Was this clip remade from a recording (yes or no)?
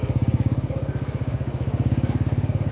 yes